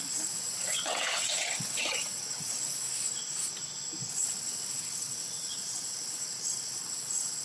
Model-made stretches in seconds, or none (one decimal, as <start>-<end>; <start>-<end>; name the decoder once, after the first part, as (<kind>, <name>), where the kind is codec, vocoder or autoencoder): 0.0-2.7 (vocoder, WaveNeXt); 4.1-7.4